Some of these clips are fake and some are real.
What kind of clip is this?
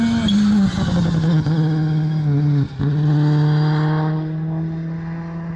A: real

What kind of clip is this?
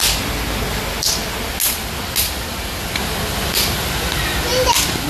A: real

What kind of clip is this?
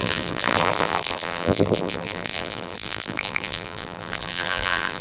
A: fake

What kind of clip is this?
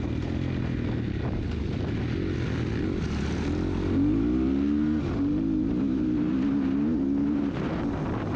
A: real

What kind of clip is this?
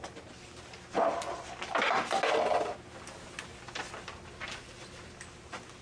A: real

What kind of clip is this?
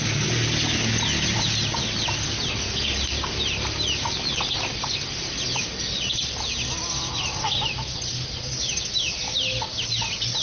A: real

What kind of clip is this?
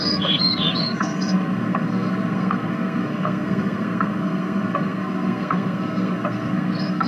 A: fake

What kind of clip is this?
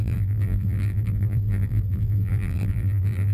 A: fake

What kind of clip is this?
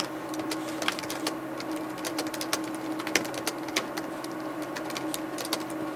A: real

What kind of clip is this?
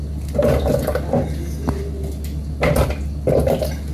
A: real